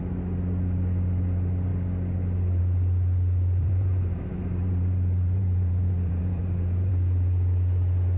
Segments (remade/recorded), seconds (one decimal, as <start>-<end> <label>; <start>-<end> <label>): 0.0-3.6 recorded; 3.6-6.9 remade; 6.9-8.2 recorded